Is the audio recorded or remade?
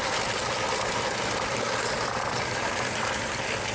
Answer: recorded